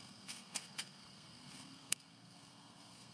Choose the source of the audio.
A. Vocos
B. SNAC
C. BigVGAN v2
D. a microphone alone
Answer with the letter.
B